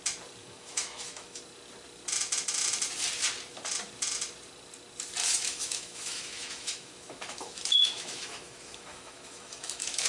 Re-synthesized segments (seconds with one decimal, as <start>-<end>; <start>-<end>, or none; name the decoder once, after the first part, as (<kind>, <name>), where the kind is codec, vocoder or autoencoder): 0.4-1.4 (autoencoder, DAC-VAE); 5.2-10.1

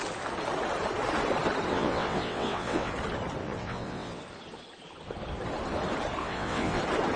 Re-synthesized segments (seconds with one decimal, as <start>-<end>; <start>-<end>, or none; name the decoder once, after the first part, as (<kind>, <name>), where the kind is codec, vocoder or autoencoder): 1.7-2.9 (vocoder, WaveNeXt); 3.4-4.2; 6.2-6.8

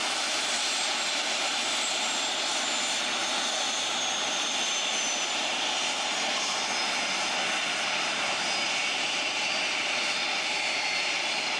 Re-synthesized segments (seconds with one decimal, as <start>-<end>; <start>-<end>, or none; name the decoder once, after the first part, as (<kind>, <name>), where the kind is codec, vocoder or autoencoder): none

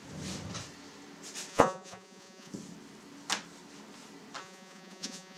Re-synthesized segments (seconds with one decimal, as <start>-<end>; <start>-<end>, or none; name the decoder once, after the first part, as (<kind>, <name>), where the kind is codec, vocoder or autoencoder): 1.5-2.5 (vocoder, Vocos); 4.4-5.4

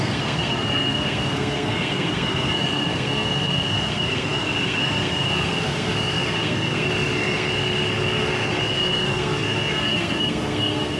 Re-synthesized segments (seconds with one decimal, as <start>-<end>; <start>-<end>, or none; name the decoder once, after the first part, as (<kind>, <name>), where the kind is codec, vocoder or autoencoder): 0.0-11.0 (codec, SNAC)

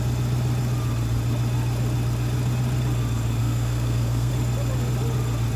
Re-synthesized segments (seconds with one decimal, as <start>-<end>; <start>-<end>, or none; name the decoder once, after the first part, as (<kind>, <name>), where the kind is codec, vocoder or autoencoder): 3.4-4.3 (codec, SNAC)

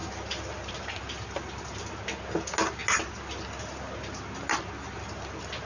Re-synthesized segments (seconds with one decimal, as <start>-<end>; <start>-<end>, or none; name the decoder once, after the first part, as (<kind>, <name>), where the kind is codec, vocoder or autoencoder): 0.0-0.7 (vocoder, BigVGAN v2)

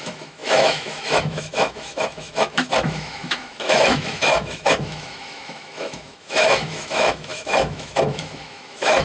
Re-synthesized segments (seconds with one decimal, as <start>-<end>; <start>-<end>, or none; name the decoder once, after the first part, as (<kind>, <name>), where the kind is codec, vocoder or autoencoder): 0.0-9.0 (autoencoder, DAC-VAE)